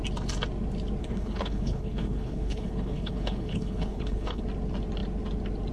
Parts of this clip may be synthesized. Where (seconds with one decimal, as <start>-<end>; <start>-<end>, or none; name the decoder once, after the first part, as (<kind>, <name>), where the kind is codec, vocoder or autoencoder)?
1.0-4.4 (codec, HILCodec)